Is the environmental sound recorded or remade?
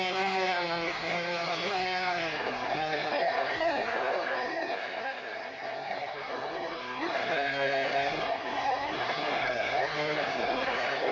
remade